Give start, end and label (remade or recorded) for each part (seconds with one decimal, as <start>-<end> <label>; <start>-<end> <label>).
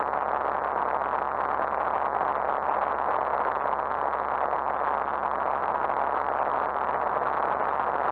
0.0-2.3 recorded; 2.3-2.9 remade; 2.9-5.6 recorded; 5.6-7.1 remade; 7.1-8.1 recorded